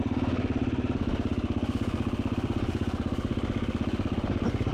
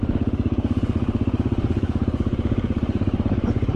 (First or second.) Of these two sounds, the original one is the first